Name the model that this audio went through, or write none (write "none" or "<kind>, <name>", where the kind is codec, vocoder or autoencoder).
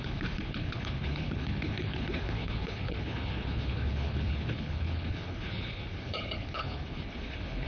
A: codec, HILCodec